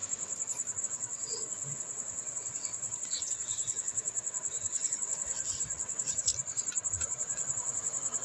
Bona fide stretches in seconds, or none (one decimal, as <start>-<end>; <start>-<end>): 0.0-0.8; 6.3-6.9